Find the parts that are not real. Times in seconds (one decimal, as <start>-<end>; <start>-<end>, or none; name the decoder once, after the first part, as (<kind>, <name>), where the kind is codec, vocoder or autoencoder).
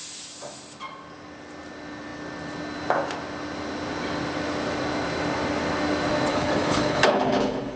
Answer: 6.3-7.8 (codec, HILCodec)